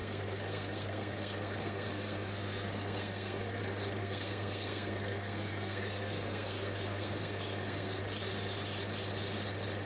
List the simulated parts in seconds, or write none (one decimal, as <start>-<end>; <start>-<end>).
0.0-3.6; 4.0-8.0